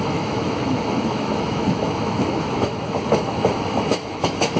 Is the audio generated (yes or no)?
yes